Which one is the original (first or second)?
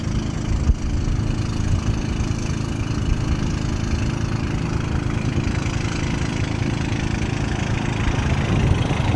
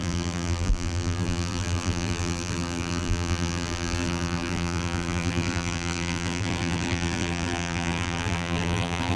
first